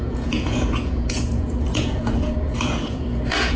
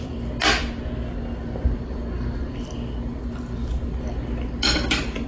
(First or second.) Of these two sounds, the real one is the second